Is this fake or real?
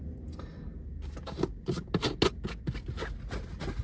real